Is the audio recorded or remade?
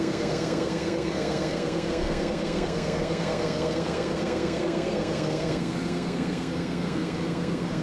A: remade